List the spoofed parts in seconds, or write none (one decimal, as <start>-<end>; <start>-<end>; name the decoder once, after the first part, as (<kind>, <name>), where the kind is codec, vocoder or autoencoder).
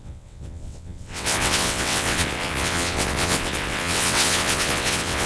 0.0-5.3 (vocoder, WaveNeXt)